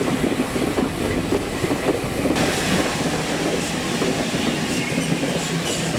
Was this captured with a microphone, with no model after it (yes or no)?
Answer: yes